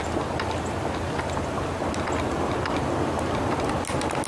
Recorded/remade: recorded